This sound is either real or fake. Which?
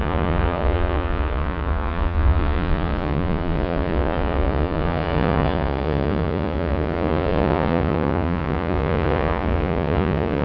fake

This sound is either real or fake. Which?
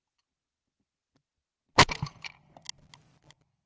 real